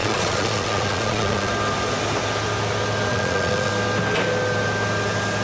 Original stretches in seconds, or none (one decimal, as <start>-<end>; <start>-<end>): 1.5-3.1; 3.7-5.4